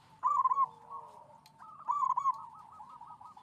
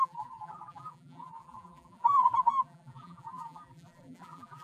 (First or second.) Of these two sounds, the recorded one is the first